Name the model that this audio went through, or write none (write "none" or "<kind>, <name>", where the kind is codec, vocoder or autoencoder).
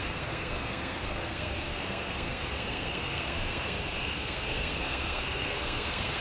codec, SNAC